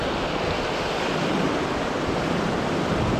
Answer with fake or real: real